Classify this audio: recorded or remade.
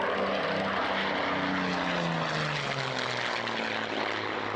recorded